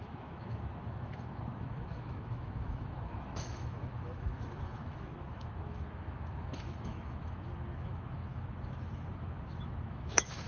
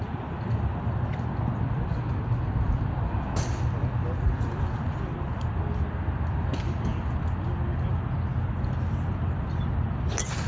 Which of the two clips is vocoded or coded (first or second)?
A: first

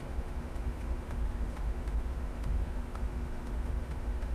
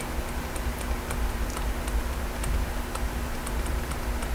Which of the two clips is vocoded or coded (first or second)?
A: first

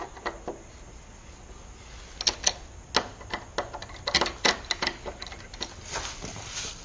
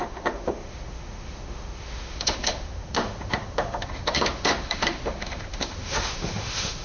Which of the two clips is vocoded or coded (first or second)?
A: second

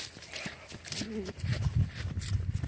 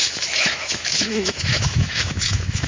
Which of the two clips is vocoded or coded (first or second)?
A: second